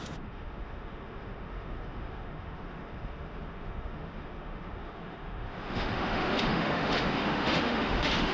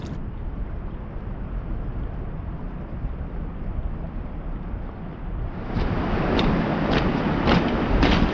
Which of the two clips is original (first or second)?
second